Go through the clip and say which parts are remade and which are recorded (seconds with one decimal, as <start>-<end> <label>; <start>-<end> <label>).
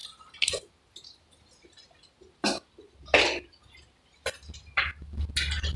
0.0-5.8 recorded